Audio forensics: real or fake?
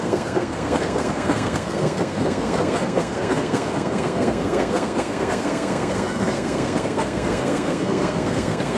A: fake